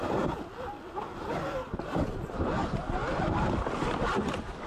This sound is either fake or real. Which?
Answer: real